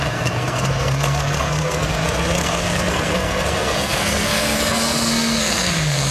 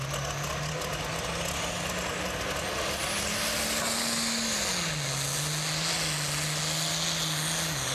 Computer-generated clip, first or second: first